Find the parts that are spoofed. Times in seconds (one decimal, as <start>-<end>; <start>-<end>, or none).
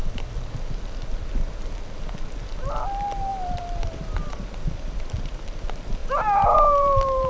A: 3.3-4.5; 6.0-7.3